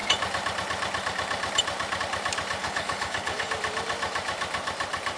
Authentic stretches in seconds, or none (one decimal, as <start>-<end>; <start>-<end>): 0.0-2.6; 3.5-5.2